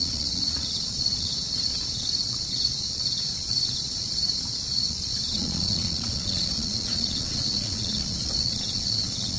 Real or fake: fake